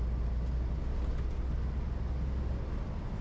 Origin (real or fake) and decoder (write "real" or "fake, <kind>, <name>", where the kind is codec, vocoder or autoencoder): real